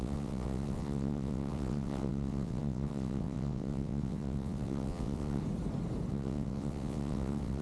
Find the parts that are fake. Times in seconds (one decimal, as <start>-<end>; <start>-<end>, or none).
0.0-5.4; 6.1-7.6